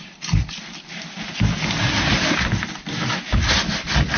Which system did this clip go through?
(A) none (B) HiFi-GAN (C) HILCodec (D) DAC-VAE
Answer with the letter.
A